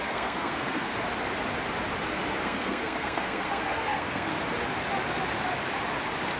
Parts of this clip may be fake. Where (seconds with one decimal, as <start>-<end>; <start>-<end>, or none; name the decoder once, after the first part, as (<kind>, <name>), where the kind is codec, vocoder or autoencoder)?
0.0-0.9 (codec, SNAC); 2.4-4.3